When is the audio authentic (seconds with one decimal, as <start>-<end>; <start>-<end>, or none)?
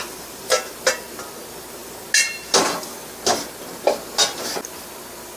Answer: 0.0-5.4